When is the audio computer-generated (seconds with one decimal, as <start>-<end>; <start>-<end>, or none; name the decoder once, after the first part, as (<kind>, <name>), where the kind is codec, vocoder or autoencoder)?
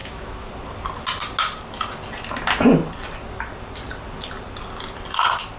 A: 0.0-0.5 (autoencoder, DAC-VAE)